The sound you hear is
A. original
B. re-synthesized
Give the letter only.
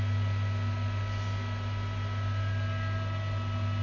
A